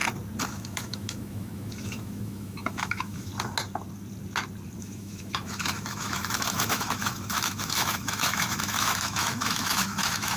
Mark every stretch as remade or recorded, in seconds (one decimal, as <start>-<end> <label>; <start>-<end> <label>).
0.0-0.5 recorded; 0.5-3.3 remade; 3.3-4.8 recorded; 4.8-10.4 remade